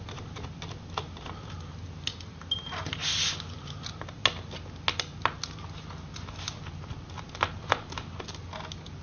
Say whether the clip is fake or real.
real